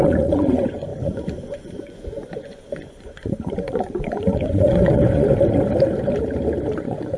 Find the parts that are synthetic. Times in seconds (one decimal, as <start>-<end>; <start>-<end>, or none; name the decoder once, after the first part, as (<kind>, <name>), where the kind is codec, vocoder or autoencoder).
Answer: 0.0-5.3 (vocoder, Vocos); 6.8-7.2